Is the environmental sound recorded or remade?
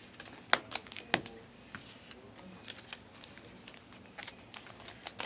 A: recorded